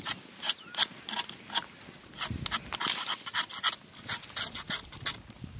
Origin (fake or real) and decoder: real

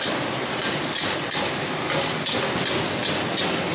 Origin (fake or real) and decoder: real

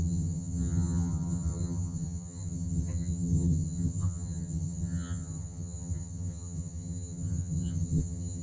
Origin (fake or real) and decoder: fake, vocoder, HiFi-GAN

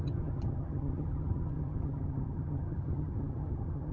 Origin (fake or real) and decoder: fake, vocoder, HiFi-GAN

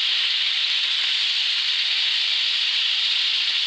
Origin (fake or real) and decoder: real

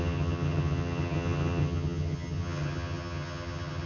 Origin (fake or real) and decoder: fake, vocoder, HiFi-GAN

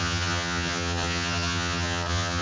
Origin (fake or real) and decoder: fake, vocoder, HiFi-GAN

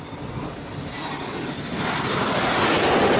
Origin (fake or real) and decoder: real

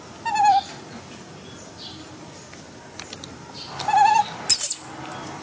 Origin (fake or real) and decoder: real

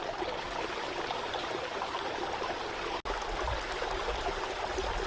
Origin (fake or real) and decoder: real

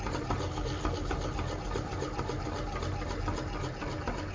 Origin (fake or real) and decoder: real